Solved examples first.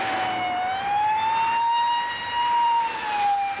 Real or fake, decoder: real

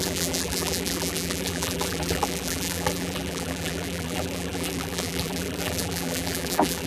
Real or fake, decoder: fake, vocoder, BigVGAN v2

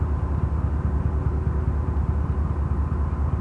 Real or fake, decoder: real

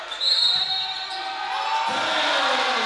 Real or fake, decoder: real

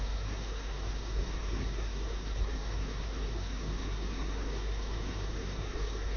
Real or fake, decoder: fake, codec, SNAC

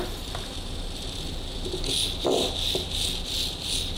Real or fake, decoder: real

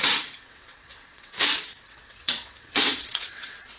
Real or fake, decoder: fake, vocoder, WaveNeXt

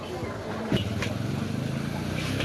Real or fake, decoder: real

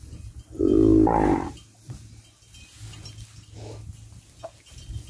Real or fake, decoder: real